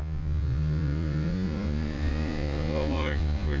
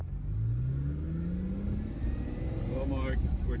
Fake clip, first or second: first